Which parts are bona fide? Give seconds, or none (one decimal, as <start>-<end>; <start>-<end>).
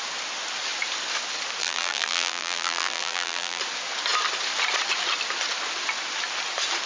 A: 0.0-1.6; 3.6-6.9